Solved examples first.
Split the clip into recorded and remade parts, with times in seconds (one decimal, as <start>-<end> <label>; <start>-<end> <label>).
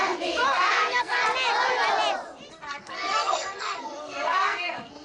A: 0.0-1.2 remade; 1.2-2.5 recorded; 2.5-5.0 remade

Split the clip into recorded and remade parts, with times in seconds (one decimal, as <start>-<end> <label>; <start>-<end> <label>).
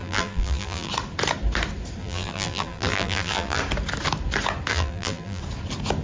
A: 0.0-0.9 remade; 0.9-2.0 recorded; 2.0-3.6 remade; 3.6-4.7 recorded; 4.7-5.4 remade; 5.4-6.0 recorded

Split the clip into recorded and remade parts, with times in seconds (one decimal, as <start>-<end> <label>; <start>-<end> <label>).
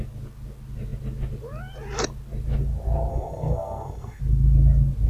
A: 0.0-3.1 recorded; 3.1-4.2 remade; 4.2-5.1 recorded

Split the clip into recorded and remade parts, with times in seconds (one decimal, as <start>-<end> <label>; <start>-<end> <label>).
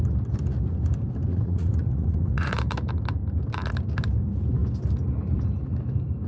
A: 0.0-1.3 recorded; 1.3-2.5 remade; 2.5-6.3 recorded